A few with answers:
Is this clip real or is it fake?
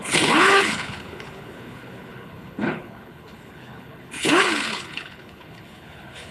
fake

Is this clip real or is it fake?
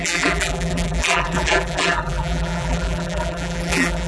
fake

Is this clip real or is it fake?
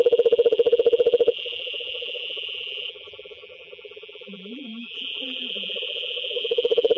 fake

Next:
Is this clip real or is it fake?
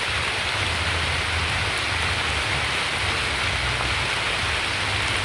real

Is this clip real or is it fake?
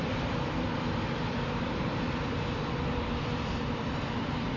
fake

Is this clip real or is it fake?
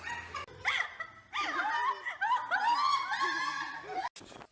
real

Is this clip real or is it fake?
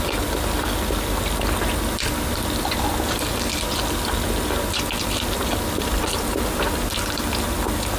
real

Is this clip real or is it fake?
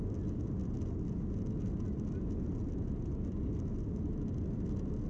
real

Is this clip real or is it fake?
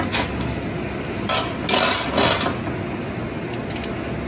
real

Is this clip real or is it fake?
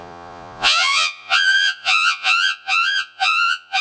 fake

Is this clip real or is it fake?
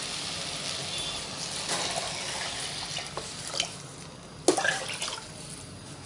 real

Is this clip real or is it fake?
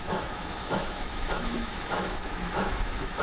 fake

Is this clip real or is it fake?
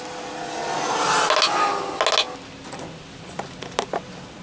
real